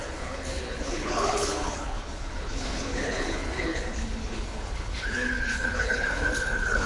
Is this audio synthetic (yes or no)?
yes